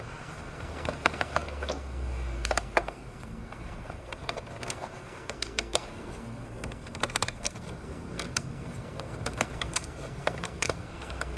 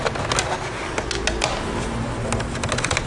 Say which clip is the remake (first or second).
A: first